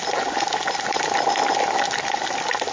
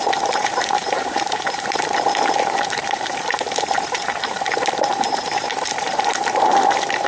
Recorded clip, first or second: first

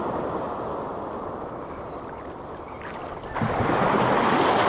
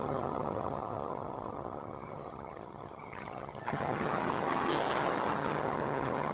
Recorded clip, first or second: first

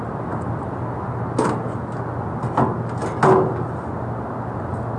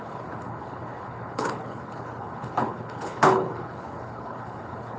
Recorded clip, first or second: first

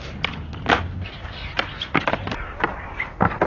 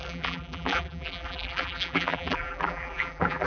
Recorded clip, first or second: first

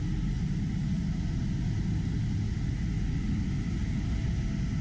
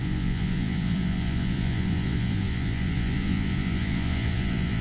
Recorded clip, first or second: first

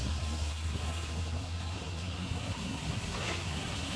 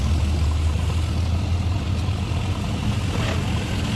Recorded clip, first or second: second